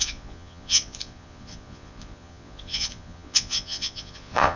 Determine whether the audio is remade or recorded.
remade